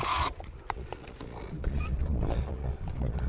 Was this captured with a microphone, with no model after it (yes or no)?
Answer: no